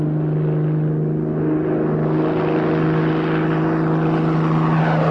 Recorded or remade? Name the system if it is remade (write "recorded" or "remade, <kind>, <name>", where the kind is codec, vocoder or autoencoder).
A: recorded